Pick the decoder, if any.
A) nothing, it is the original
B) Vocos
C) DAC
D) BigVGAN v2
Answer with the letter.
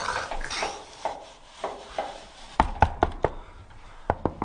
D